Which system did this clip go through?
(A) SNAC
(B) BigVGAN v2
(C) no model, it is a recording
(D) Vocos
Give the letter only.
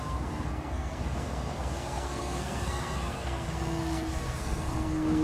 A